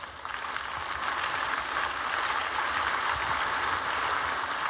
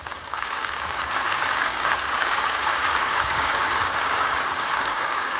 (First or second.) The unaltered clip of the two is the first